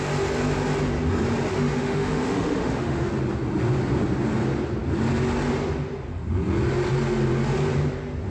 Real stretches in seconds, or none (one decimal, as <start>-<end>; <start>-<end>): 0.0-1.5; 3.1-8.3